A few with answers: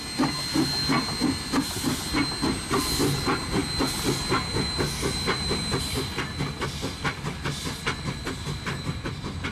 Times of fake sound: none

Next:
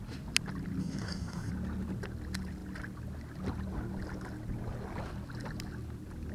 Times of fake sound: 0.8-1.5

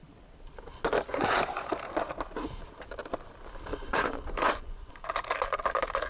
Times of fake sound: 1.1-1.7; 3.7-4.9

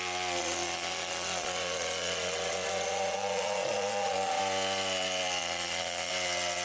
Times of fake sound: 0.4-4.4; 5.4-6.1

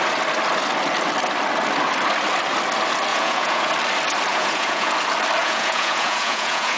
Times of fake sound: 3.1-3.7; 4.3-4.9; 5.4-6.8

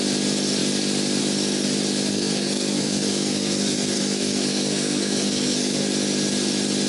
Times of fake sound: 2.1-5.9

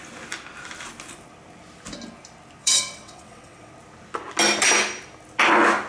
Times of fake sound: 2.6-3.7

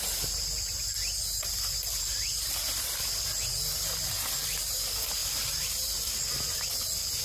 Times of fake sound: none